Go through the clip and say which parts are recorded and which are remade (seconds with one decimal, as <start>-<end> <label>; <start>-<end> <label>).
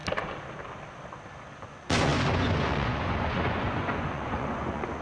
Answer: 0.0-1.6 recorded; 1.6-5.0 remade